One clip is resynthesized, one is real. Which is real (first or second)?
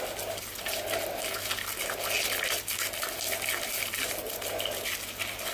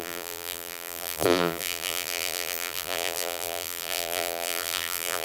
first